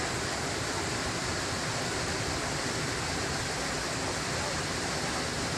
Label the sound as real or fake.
real